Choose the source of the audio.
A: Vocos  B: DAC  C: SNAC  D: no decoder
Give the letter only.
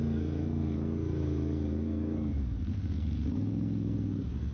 C